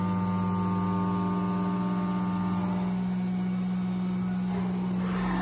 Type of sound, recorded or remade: recorded